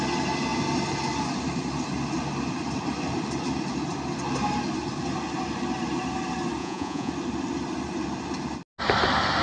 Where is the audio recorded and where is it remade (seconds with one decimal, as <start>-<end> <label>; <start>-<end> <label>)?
0.0-6.6 recorded; 6.6-7.1 remade; 7.1-9.4 recorded